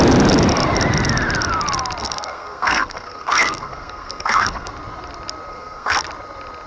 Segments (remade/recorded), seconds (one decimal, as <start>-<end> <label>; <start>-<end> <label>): 0.0-2.0 recorded; 2.0-4.7 remade; 4.7-5.5 recorded; 5.5-6.0 remade; 6.0-6.7 recorded